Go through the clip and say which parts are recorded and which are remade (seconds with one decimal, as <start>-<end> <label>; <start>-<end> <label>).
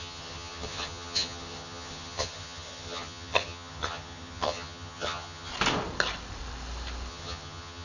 0.0-5.5 remade; 5.5-7.1 recorded; 7.1-7.8 remade